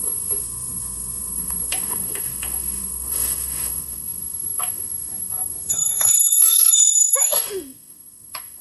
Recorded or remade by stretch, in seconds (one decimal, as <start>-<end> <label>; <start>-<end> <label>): 0.0-8.6 remade